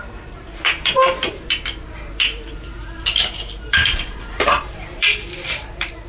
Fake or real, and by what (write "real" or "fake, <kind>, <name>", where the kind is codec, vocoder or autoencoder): fake, vocoder, BigVGAN v2